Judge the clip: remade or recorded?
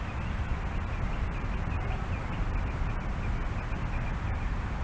recorded